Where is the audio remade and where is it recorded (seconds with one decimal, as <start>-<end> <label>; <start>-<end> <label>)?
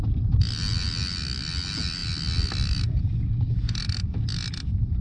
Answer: 0.0-5.0 recorded